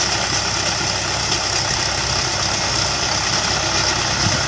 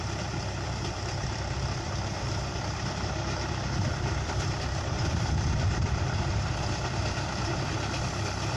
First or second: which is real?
first